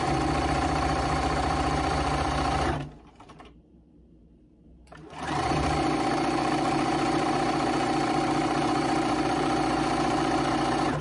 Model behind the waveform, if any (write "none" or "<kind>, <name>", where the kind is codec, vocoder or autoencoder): vocoder, BigVGAN v2